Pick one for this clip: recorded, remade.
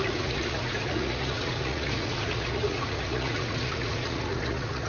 remade